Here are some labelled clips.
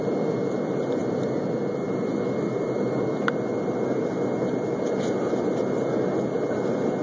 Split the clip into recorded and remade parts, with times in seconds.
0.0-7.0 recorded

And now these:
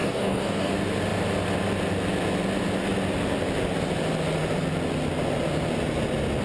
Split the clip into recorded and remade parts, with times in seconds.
0.0-0.7 remade; 0.7-6.4 recorded

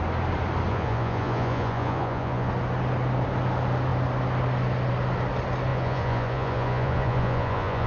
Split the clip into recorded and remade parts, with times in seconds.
0.0-0.7 recorded; 0.7-2.5 remade; 2.5-5.7 recorded; 5.7-7.9 remade

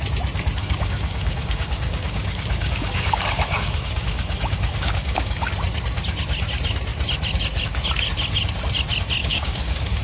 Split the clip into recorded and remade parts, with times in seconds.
0.0-0.6 recorded; 0.6-5.5 remade; 5.5-9.2 recorded; 9.2-10.0 remade

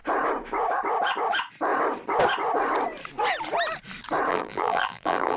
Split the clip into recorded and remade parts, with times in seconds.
0.0-4.3 recorded; 4.3-5.4 remade

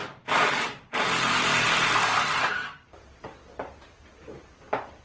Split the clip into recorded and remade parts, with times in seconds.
0.0-3.0 remade; 3.0-5.0 recorded

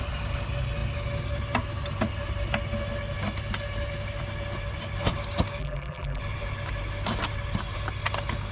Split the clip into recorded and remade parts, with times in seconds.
0.0-5.6 recorded; 5.6-6.2 remade; 6.2-8.5 recorded